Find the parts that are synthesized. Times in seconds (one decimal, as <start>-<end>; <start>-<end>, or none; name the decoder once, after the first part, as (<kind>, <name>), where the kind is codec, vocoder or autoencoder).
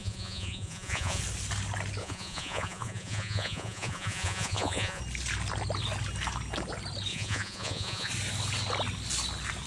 0.0-1.2 (vocoder, Vocos); 2.0-5.0; 7.1-8.1